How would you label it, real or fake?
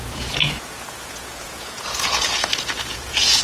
fake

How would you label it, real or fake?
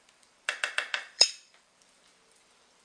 fake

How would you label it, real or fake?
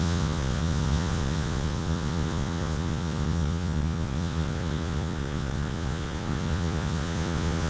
fake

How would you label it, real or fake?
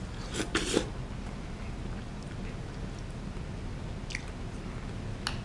real